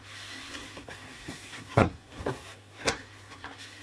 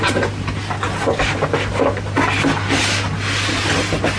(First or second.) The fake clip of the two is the first